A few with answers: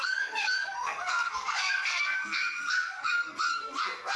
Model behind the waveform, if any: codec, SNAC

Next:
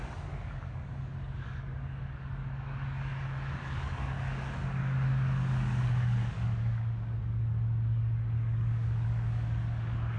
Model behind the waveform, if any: codec, DAC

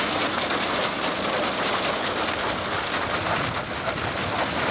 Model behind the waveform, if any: none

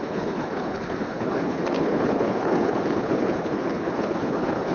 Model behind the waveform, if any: codec, HILCodec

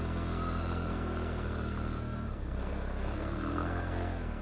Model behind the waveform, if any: codec, SNAC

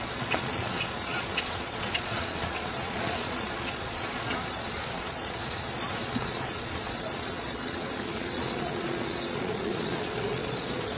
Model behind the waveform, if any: vocoder, Vocos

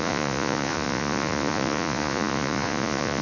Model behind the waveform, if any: vocoder, Vocos